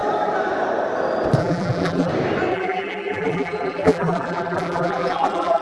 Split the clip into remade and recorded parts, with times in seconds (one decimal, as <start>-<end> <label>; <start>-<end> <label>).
0.0-1.4 recorded; 1.4-2.1 remade; 2.1-2.5 recorded; 2.5-5.6 remade